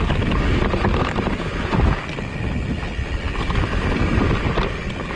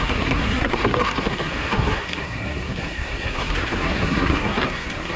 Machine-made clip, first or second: second